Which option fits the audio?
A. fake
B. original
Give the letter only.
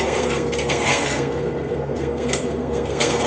A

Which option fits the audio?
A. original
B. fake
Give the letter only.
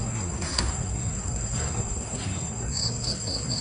B